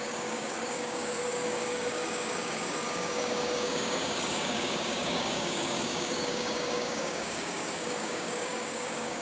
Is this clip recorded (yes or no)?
no